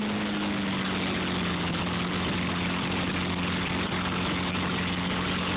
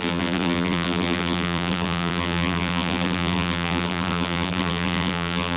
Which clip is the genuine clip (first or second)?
first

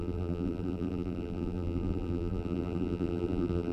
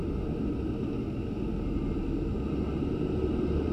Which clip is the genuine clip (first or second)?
second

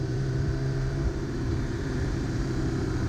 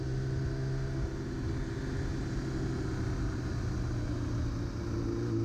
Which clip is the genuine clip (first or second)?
second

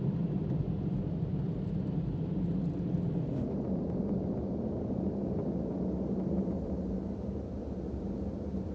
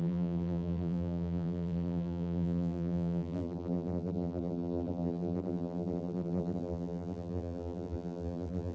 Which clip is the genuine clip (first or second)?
first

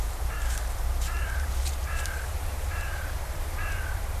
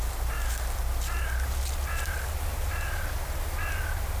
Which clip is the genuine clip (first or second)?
second